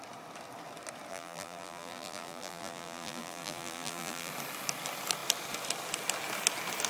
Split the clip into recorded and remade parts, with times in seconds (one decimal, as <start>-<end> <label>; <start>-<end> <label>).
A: 0.0-1.1 recorded; 1.1-4.3 remade; 4.3-6.9 recorded